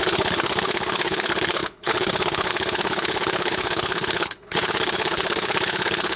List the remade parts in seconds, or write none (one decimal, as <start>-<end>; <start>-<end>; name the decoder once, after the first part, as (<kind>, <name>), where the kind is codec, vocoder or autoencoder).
0.0-6.2 (codec, HILCodec)